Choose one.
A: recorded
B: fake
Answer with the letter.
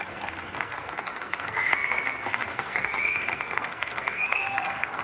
B